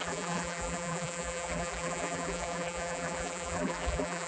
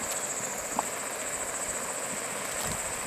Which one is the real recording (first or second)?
second